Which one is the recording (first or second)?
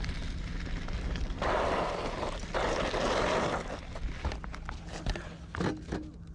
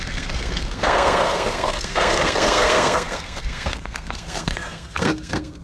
first